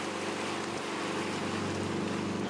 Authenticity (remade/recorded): recorded